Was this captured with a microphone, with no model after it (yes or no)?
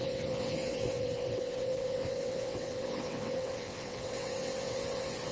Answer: no